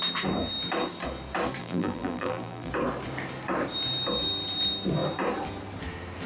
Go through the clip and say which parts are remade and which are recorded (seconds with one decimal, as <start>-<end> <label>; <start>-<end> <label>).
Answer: 0.0-1.6 recorded; 1.6-2.7 remade; 2.7-6.3 recorded